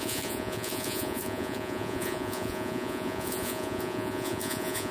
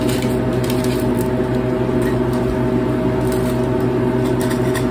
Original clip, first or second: second